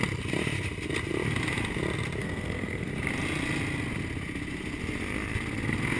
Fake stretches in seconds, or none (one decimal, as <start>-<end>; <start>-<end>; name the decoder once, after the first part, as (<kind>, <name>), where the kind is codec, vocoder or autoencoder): 2.2-2.9 (codec, SNAC)